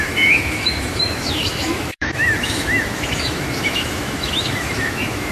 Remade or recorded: remade